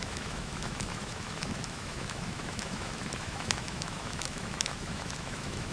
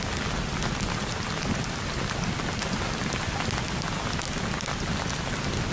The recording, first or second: second